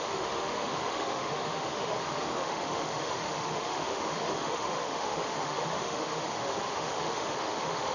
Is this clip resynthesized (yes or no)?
yes